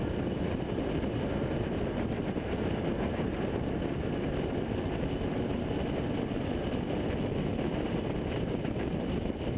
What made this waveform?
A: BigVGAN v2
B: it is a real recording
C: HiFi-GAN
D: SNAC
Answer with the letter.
B